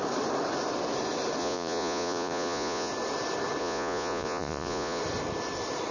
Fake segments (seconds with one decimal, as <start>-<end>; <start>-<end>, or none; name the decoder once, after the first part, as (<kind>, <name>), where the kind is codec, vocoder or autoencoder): 1.4-2.9 (vocoder, Vocos); 3.6-5.0